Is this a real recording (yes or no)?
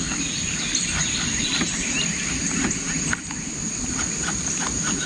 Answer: yes